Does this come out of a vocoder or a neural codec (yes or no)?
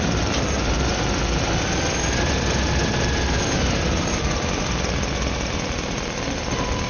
no